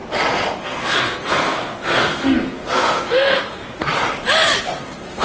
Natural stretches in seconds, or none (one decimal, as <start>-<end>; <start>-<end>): 0.0-0.6; 3.6-4.8